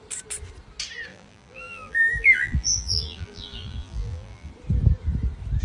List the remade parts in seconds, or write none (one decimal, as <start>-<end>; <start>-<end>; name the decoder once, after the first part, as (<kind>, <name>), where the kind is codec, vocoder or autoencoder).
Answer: 1.1-4.5 (vocoder, BigVGAN v2)